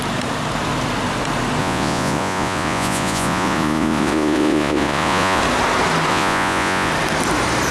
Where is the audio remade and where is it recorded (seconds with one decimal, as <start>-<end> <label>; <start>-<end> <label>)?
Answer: 0.0-1.6 recorded; 1.6-5.4 remade; 5.4-6.1 recorded; 6.1-6.9 remade; 6.9-7.7 recorded